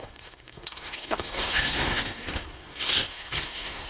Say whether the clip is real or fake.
fake